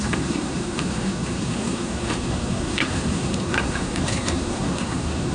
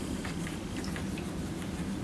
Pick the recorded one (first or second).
second